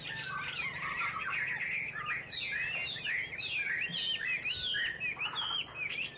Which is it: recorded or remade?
recorded